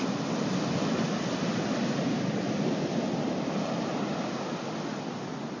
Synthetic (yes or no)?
no